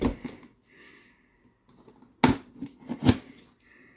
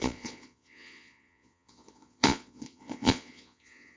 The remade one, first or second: second